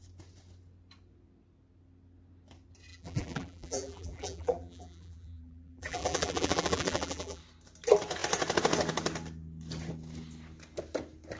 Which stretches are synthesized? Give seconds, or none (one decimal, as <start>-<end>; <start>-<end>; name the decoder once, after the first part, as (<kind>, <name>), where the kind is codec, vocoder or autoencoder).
2.9-7.4 (vocoder, BigVGAN v2)